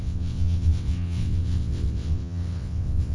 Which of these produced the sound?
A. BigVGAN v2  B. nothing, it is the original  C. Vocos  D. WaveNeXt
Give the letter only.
D